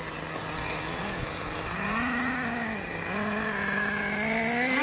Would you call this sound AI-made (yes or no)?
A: no